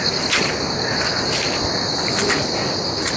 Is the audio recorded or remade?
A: recorded